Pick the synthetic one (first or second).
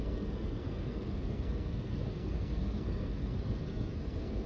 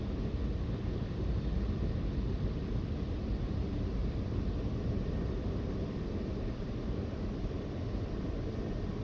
first